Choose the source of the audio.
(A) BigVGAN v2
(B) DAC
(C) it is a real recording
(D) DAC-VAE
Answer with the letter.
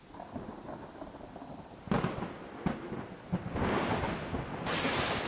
C